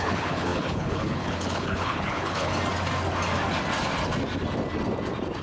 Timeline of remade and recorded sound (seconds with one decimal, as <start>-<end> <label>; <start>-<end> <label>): 0.0-2.5 remade; 2.5-5.4 recorded